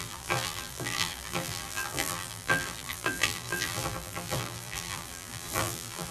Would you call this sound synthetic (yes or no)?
yes